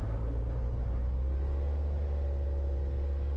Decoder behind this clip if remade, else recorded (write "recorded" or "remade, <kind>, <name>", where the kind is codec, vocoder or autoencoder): recorded